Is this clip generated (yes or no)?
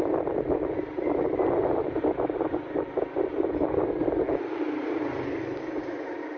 no